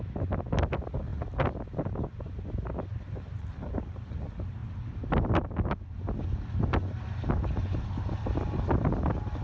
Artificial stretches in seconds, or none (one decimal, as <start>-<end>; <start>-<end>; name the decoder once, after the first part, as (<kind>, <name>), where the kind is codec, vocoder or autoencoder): none